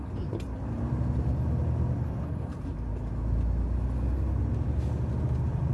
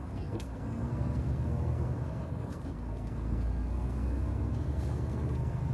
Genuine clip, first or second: first